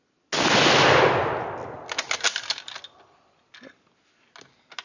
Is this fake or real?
real